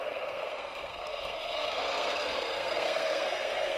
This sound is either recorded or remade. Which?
remade